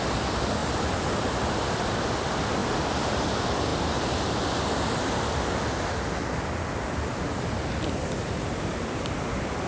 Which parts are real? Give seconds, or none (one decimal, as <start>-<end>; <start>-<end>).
0.0-9.7